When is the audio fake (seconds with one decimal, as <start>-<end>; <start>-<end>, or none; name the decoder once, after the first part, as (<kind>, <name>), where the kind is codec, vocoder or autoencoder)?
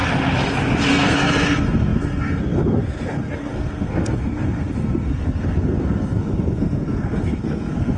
0.9-8.0 (codec, SNAC)